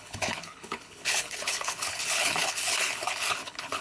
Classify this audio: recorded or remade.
remade